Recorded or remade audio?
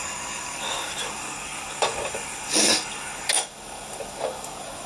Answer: remade